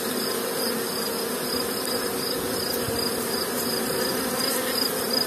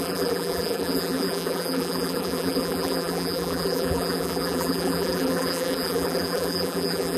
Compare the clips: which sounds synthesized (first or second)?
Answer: second